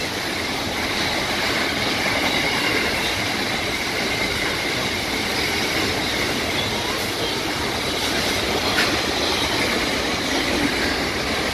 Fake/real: real